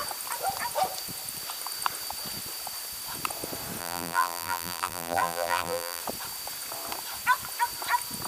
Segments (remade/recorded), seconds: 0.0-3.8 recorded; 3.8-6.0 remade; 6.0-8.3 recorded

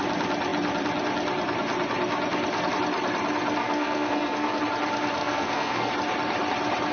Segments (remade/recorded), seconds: 0.0-3.6 recorded; 3.6-4.6 remade; 4.6-5.2 recorded; 5.2-5.9 remade; 5.9-6.9 recorded